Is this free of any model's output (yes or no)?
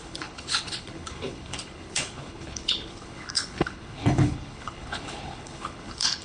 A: no